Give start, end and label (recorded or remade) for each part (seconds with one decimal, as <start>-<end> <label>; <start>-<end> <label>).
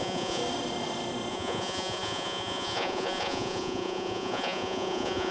0.0-0.4 remade; 0.4-1.3 recorded; 1.3-5.3 remade